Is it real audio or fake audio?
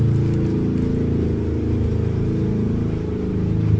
real